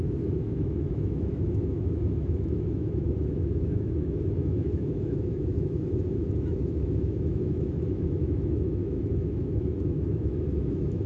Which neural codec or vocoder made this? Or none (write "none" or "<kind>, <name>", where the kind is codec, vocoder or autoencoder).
autoencoder, DAC-VAE